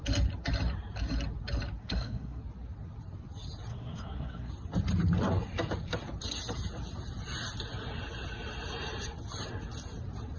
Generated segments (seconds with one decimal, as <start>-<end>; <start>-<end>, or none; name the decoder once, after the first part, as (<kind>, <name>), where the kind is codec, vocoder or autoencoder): 1.8-2.4 (codec, SNAC); 3.7-4.5